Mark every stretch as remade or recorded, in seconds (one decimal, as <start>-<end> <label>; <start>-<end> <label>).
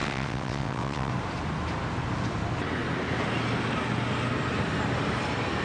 0.0-1.1 remade; 1.1-5.6 recorded